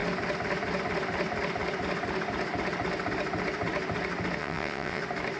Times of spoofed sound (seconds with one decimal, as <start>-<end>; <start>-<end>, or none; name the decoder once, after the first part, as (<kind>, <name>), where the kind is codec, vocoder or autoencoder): 4.4-5.0 (vocoder, WaveNeXt)